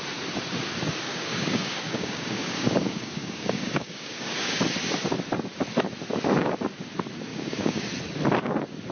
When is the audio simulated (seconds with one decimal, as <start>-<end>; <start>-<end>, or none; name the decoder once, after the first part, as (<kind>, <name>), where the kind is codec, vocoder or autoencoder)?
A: 1.1-4.6 (codec, DAC); 7.3-7.9